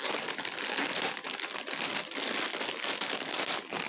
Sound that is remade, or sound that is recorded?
recorded